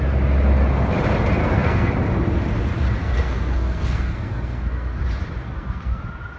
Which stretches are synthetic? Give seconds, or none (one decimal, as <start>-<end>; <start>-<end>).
1.4-1.9; 3.0-5.0; 5.4-6.0